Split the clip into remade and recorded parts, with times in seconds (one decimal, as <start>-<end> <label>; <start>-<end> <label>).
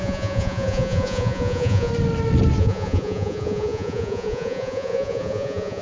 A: 0.0-1.9 remade; 1.9-2.6 recorded; 2.6-5.8 remade